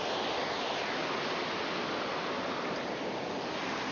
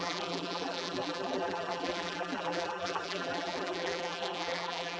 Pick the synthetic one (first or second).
second